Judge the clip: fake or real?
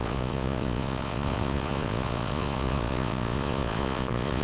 fake